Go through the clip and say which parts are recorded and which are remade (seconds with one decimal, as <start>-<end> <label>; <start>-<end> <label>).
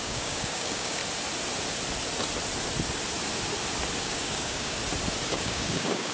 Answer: 0.0-1.0 remade; 1.0-4.0 recorded; 4.0-4.8 remade; 4.8-5.3 recorded; 5.3-6.1 remade